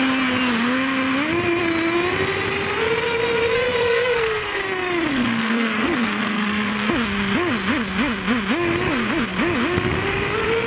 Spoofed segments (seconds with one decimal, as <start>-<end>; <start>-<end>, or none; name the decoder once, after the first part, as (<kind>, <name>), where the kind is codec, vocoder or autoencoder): 3.8-4.6 (codec, SNAC); 5.1-6.9